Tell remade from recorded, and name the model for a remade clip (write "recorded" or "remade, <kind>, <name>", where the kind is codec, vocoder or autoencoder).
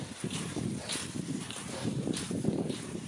recorded